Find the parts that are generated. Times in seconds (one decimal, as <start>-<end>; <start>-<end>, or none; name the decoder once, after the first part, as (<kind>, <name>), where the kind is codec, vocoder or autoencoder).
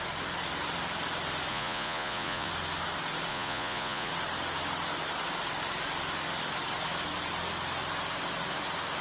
1.5-2.5 (vocoder, Vocos); 3.3-4.1